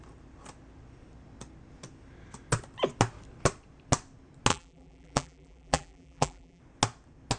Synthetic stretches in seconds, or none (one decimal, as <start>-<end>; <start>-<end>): 4.5-6.6